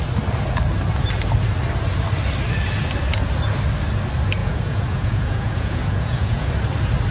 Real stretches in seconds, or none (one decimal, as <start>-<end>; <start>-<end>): 0.0-4.4; 6.5-7.1